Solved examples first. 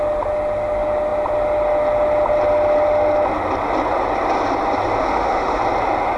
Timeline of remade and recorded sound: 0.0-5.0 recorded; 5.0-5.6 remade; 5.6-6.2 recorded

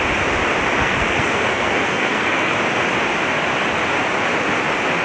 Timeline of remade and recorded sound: 0.0-0.8 recorded; 0.8-2.5 remade; 2.5-5.0 recorded

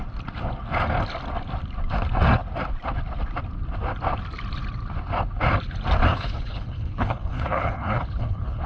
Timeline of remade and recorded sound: 0.0-6.1 recorded; 6.1-8.7 remade